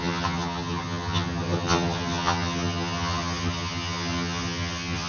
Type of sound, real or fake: fake